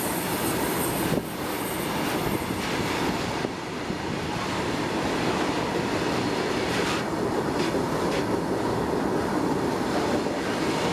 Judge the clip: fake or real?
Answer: real